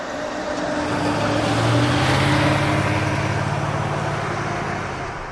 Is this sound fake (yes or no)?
no